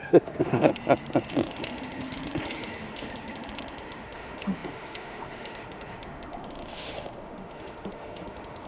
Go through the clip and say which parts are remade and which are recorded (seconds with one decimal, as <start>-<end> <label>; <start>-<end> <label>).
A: 0.0-0.7 remade; 0.7-1.3 recorded; 1.3-8.7 remade